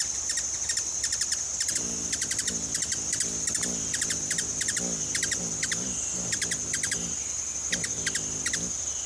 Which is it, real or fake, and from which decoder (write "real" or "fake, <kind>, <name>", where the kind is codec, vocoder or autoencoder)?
real